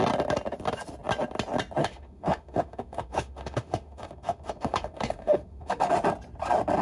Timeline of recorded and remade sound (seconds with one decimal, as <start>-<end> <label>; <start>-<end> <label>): 0.0-1.8 recorded; 1.8-5.9 remade; 5.9-6.8 recorded